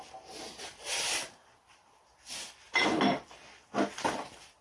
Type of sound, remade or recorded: recorded